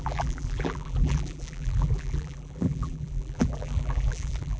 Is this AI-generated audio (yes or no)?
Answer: yes